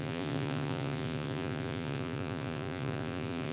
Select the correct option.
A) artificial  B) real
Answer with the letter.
A